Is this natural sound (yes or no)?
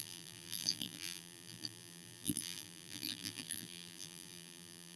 no